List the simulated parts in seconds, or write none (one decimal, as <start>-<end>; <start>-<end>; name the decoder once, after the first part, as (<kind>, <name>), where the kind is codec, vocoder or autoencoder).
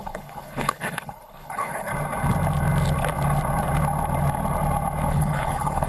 0.0-1.9 (codec, HILCodec); 5.1-5.9